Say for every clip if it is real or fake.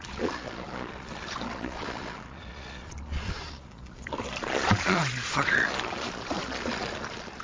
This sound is fake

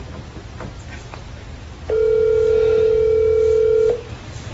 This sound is real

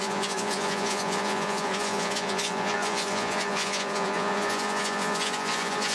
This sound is fake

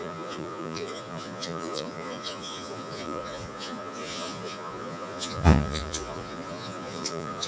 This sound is fake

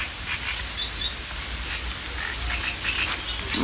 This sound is real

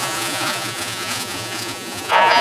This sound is fake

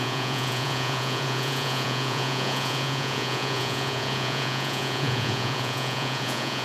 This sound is fake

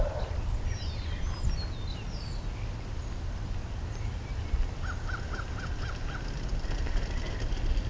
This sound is real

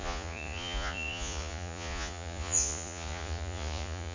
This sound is fake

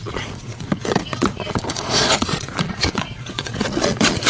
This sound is fake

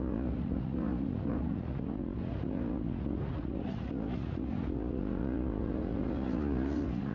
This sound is fake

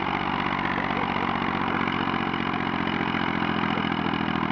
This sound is real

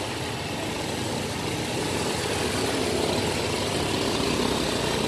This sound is real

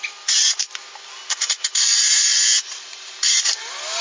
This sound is real